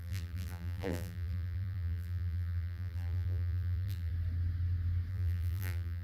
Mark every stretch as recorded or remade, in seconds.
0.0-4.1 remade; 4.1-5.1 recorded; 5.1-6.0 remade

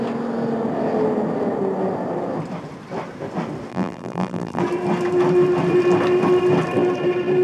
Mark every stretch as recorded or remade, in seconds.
0.0-3.7 recorded; 3.7-4.6 remade; 4.6-7.4 recorded

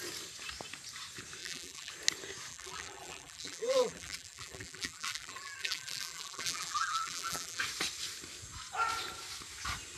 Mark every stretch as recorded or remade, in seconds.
0.0-1.4 recorded; 1.4-1.9 remade; 1.9-2.5 recorded; 2.5-7.6 remade; 7.6-10.0 recorded

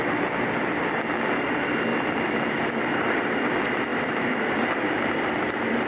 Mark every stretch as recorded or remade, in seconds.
0.0-1.9 recorded; 1.9-2.9 remade; 2.9-3.9 recorded; 3.9-5.3 remade; 5.3-5.9 recorded

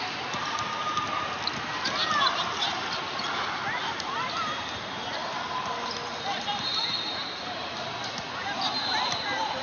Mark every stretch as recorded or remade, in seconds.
0.0-9.6 recorded